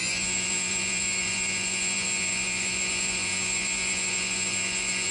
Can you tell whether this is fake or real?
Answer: fake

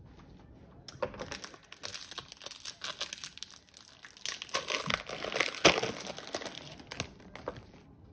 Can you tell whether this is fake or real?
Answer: real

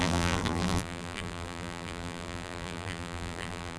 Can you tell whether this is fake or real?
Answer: fake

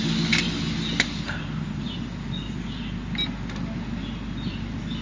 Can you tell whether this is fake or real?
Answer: real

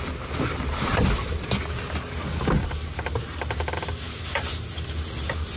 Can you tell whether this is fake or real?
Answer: real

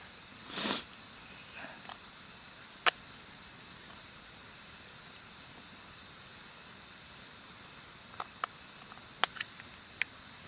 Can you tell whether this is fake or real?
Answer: real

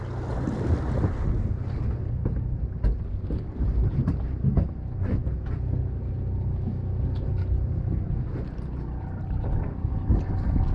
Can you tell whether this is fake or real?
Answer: real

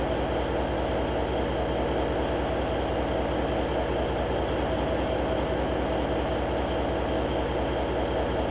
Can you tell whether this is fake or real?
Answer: real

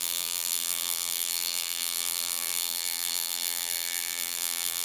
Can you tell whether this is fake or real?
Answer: fake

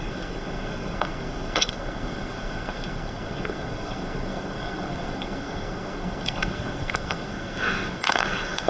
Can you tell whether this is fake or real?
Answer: fake